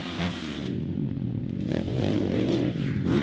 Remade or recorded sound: remade